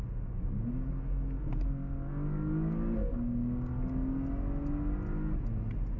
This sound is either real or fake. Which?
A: real